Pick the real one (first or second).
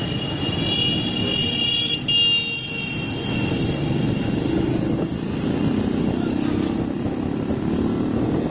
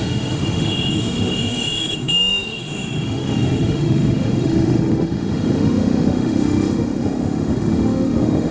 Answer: first